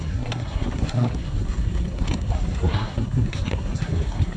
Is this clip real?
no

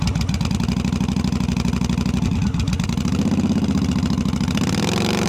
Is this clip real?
yes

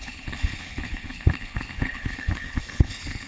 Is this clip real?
no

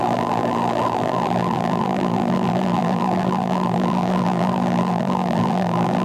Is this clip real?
no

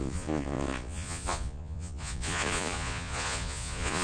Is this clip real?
no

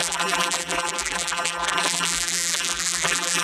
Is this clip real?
no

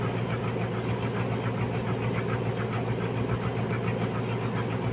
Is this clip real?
yes